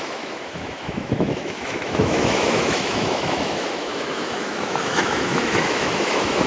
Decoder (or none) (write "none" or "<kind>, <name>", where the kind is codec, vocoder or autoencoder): autoencoder, DAC-VAE